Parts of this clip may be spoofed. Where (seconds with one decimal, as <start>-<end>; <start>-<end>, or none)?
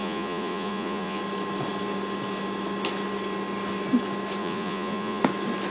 0.0-1.2; 4.4-5.2